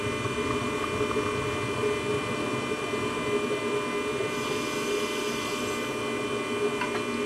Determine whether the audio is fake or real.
real